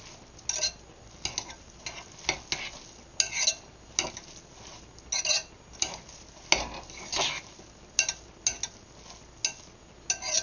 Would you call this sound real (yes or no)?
yes